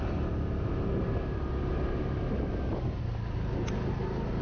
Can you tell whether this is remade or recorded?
recorded